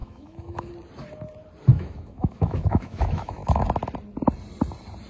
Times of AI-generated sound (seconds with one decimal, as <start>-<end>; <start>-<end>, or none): 0.0-0.7; 1.7-3.6